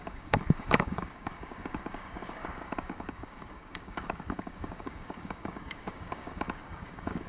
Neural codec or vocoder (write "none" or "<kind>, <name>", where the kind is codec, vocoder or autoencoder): codec, DAC